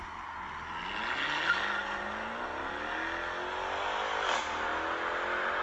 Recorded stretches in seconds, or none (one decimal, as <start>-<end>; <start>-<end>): 0.0-5.6